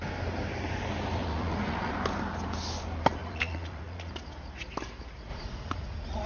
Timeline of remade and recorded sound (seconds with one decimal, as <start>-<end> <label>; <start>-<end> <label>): 0.0-1.2 recorded; 1.2-1.9 remade; 1.9-3.2 recorded; 3.2-4.1 remade; 4.1-5.3 recorded; 5.3-6.3 remade